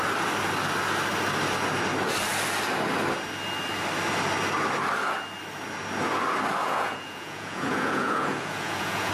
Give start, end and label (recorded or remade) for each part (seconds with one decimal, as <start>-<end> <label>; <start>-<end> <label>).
0.0-6.6 recorded; 6.6-9.1 remade